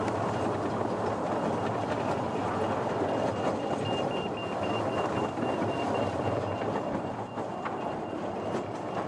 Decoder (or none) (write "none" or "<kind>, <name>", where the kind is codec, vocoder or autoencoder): none